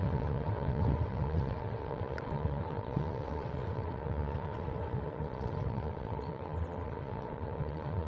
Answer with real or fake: fake